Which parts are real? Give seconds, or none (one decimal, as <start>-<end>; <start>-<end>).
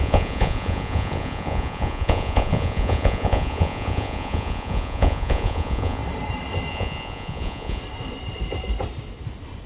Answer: 6.0-6.7; 7.8-9.7